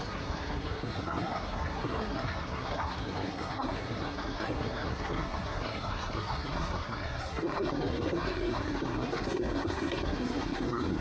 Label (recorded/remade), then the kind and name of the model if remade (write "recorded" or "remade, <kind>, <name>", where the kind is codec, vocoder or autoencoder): remade, codec, SNAC